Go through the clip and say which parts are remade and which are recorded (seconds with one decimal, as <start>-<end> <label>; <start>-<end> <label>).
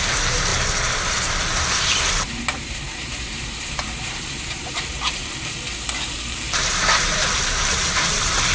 0.0-0.5 remade; 0.5-1.3 recorded; 1.3-5.2 remade; 5.2-6.5 recorded; 6.5-8.5 remade